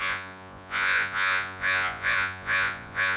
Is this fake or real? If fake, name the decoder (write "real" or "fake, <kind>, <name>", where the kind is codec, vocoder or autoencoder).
fake, vocoder, Vocos